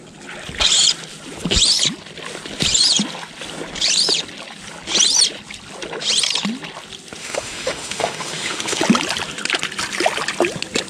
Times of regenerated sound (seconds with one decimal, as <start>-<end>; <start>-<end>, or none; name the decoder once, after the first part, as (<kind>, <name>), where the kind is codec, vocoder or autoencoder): 7.2-8.8 (autoencoder, DAC-VAE)